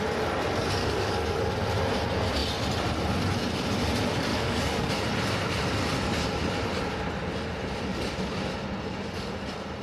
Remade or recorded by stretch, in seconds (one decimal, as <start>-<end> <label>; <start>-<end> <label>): 0.0-0.8 recorded; 0.8-1.4 remade; 1.4-4.3 recorded; 4.3-4.9 remade; 4.9-9.8 recorded